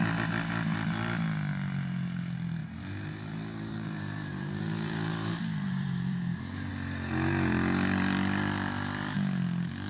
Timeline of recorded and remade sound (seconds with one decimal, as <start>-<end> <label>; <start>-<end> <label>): 0.0-2.6 recorded; 2.6-6.7 remade; 6.7-9.9 recorded